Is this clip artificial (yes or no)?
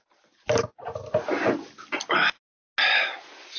no